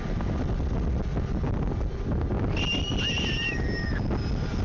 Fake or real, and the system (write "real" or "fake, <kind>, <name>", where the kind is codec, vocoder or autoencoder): real